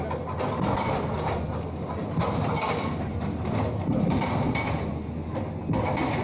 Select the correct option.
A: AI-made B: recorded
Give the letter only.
B